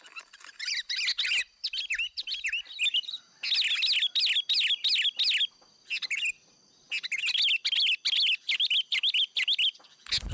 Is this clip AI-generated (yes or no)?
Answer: no